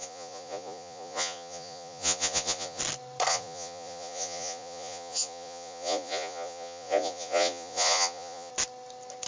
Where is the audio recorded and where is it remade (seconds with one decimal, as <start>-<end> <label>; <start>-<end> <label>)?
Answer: 0.0-2.8 remade; 2.8-3.3 recorded; 3.3-8.5 remade; 8.5-9.3 recorded